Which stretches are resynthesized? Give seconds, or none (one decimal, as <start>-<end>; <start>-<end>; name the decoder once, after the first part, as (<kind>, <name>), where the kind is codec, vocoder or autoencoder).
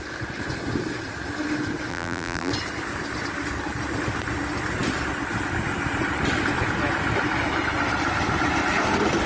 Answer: 1.9-2.5 (vocoder, BigVGAN v2)